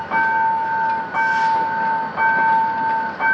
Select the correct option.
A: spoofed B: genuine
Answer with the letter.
B